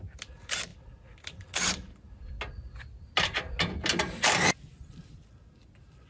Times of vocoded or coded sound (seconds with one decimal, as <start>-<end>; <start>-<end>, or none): none